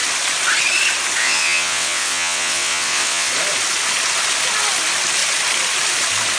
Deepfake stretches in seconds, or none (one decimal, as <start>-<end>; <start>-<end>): 1.2-3.3